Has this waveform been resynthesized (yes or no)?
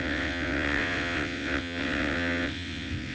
yes